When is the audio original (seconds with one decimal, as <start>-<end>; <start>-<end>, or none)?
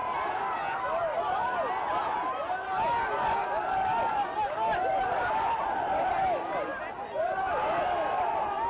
0.0-8.7